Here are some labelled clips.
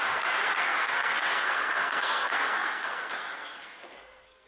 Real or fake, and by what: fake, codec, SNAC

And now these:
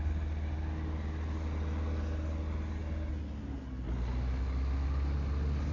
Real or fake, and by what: real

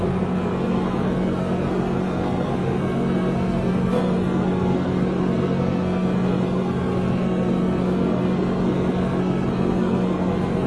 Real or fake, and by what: fake, codec, SNAC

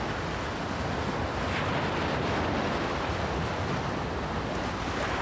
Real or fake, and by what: real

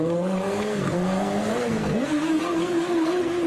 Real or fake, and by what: fake, codec, SNAC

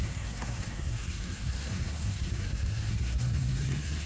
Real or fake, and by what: fake, codec, SNAC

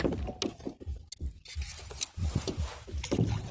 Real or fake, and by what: real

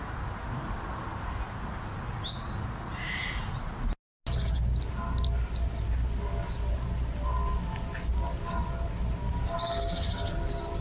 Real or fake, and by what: real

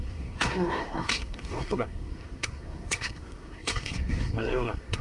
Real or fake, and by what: fake, codec, SNAC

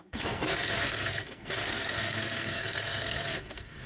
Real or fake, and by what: fake, codec, SNAC